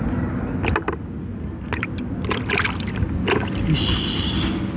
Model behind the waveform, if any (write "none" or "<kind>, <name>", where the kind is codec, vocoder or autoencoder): none